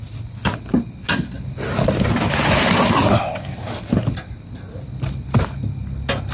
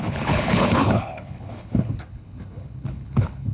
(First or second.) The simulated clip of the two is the second